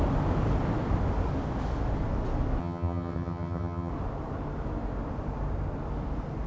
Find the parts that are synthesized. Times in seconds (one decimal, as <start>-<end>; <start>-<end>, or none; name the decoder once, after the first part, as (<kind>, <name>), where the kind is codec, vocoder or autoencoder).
2.6-3.9 (vocoder, HiFi-GAN)